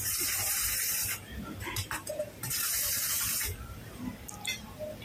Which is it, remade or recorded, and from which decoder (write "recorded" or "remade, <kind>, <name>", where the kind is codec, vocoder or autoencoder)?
remade, vocoder, BigVGAN v2